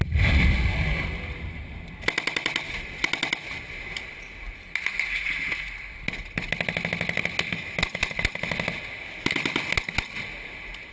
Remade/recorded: recorded